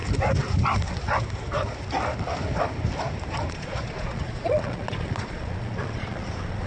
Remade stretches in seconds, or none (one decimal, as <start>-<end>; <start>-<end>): 3.5-6.7